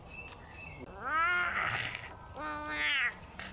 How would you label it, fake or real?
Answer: real